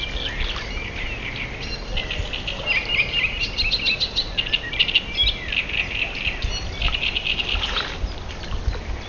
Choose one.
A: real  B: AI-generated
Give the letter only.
A